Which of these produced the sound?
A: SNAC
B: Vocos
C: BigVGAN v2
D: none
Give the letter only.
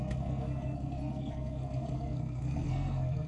A